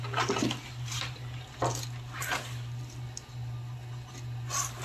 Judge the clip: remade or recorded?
recorded